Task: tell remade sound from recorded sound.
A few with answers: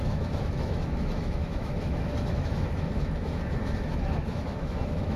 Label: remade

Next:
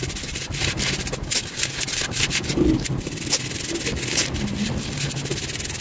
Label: recorded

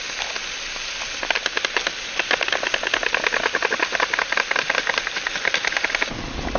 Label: recorded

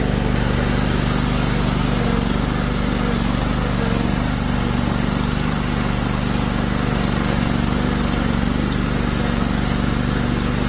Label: recorded